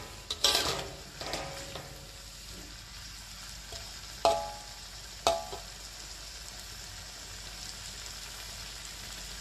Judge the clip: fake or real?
real